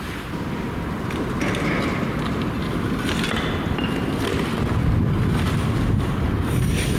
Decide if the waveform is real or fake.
real